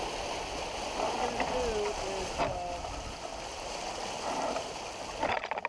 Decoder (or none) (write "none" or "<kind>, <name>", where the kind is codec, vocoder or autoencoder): none